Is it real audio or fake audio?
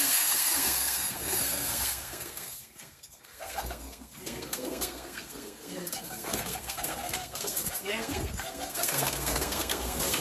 fake